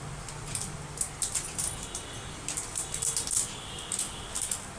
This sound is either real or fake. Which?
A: real